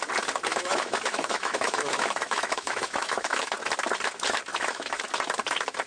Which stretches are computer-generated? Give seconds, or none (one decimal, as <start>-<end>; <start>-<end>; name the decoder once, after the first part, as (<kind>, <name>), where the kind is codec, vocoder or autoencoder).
0.5-3.5 (autoencoder, DAC-VAE); 4.5-5.0